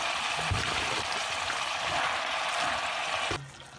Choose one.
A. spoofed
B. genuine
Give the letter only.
B